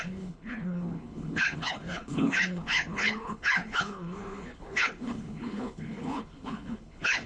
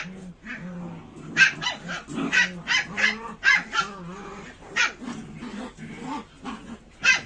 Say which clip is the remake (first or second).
first